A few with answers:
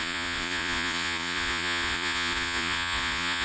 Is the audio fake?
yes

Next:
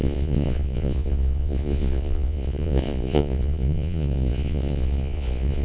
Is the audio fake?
yes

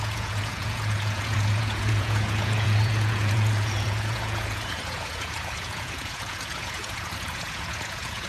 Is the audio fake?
yes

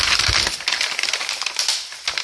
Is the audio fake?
no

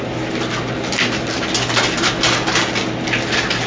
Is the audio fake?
no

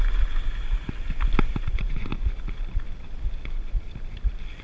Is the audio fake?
no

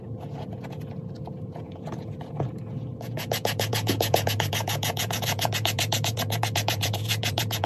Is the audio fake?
yes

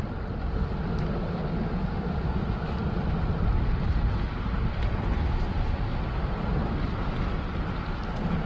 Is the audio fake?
no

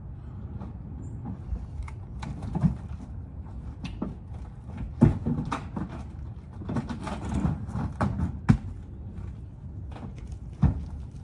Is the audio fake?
no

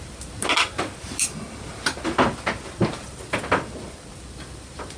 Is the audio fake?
no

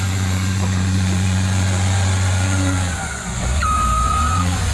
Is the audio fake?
yes